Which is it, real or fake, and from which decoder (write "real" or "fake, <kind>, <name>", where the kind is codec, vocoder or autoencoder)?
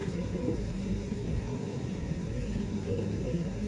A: fake, codec, SNAC